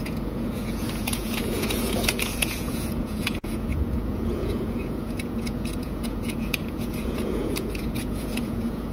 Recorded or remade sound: remade